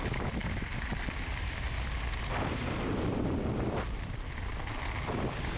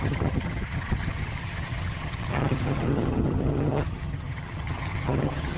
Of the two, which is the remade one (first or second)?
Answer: second